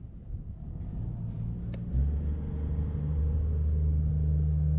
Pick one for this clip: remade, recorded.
recorded